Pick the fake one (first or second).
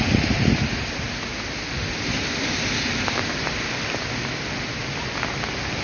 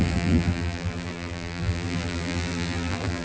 second